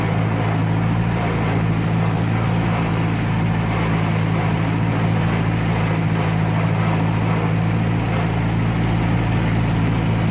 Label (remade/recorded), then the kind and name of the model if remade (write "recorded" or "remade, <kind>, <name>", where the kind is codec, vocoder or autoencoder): recorded